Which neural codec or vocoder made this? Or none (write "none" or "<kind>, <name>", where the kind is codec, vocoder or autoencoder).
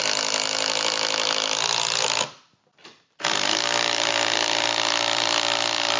none